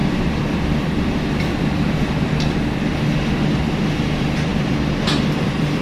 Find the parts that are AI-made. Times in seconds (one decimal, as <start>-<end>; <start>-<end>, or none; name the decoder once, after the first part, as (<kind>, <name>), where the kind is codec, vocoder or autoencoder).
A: 0.0-5.8 (vocoder, BigVGAN v2)